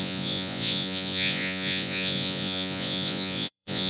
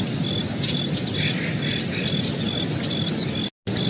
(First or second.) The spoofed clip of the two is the first